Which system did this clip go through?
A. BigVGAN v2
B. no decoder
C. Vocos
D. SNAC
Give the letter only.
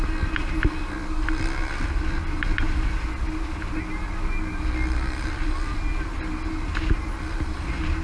B